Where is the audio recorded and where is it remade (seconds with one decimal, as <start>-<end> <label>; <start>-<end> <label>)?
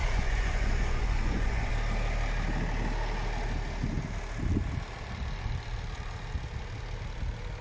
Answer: 0.0-1.7 remade; 1.7-7.6 recorded